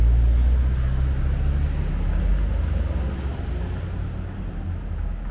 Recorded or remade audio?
recorded